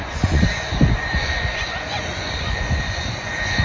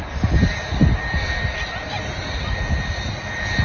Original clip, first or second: second